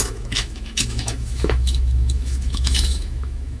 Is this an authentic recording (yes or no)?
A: no